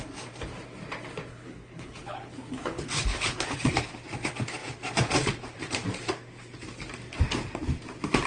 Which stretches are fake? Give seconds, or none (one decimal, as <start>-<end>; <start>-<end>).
1.3-4.0